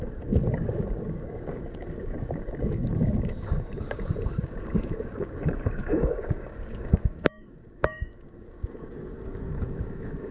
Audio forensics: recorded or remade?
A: remade